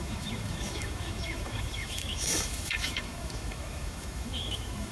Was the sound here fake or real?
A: fake